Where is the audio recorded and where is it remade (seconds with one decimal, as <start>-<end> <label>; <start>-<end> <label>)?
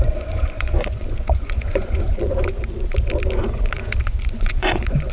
0.0-2.6 remade; 2.6-3.5 recorded; 3.5-5.1 remade